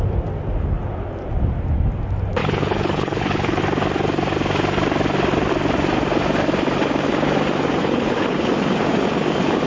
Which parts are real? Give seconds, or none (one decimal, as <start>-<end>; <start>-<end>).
0.0-2.4; 3.6-7.8; 8.5-9.7